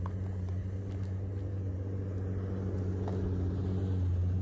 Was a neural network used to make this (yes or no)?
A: no